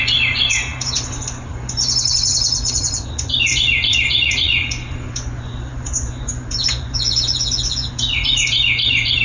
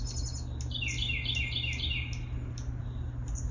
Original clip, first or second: second